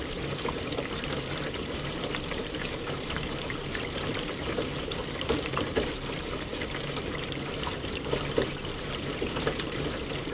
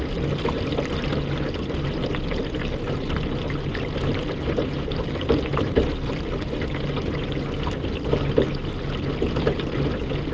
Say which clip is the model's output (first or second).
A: first